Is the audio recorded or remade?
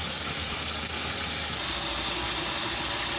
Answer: recorded